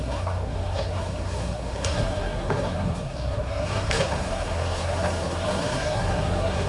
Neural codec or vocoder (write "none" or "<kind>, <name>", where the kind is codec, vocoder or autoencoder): codec, SNAC